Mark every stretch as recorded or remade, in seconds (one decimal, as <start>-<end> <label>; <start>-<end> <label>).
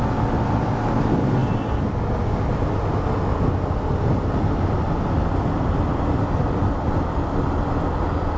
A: 0.0-8.4 recorded